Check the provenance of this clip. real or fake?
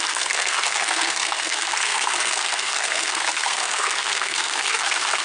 fake